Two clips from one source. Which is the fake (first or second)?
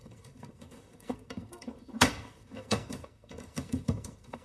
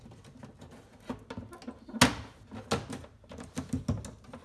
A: first